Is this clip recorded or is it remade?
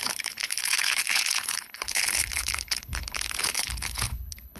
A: remade